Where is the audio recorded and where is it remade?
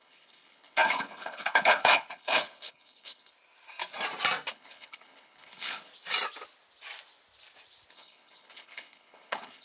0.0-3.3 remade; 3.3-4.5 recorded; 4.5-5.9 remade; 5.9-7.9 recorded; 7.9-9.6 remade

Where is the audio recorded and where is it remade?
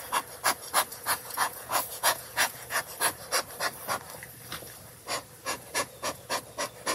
0.0-0.9 recorded; 0.9-2.8 remade; 2.8-5.4 recorded; 5.4-6.4 remade; 6.4-6.9 recorded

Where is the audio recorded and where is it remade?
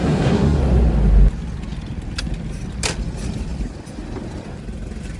0.0-0.6 remade; 0.6-5.2 recorded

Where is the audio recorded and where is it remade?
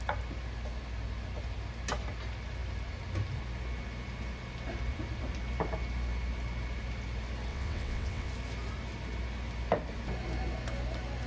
0.0-7.5 recorded; 7.5-8.3 remade; 8.3-11.3 recorded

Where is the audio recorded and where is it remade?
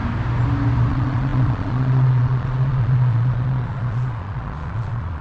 0.0-0.9 recorded; 0.9-5.2 remade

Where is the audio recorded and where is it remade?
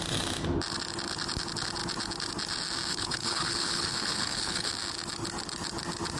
0.0-2.9 recorded; 2.9-4.7 remade; 4.7-6.2 recorded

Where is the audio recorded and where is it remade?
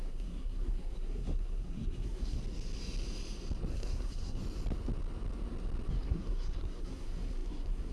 0.0-2.4 remade; 2.4-3.7 recorded; 3.7-4.4 remade; 4.4-5.9 recorded; 5.9-7.9 remade